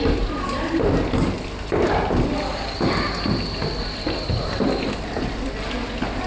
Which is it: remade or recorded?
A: recorded